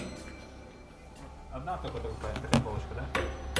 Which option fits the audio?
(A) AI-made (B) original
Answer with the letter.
B